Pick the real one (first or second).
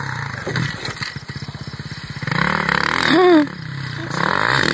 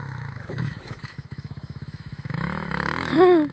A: first